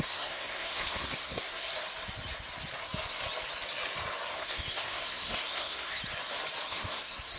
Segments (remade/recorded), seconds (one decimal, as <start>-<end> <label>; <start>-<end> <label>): 0.0-1.7 remade; 1.7-4.3 recorded; 4.3-5.9 remade; 5.9-6.7 recorded; 6.7-7.4 remade